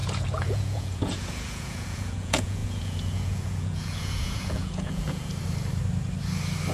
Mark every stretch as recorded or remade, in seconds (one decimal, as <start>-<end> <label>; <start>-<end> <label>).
0.0-5.3 remade; 5.3-6.7 recorded